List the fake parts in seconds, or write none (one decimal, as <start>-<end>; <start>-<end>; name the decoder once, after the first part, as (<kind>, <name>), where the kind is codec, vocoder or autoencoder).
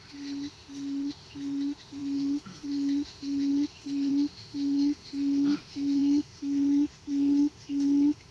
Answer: 0.0-8.3 (autoencoder, DAC-VAE)